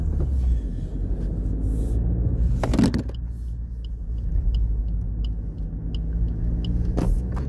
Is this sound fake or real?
real